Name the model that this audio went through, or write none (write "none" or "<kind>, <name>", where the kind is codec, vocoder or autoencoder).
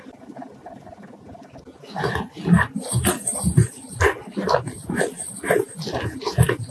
none